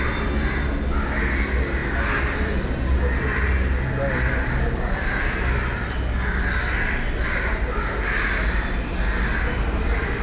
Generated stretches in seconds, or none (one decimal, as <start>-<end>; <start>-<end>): none